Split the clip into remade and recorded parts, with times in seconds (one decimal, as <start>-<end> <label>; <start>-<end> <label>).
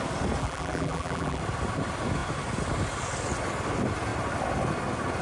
0.0-0.4 recorded; 0.4-1.4 remade; 1.4-5.2 recorded